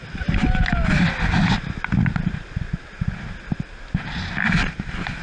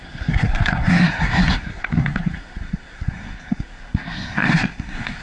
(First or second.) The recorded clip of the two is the first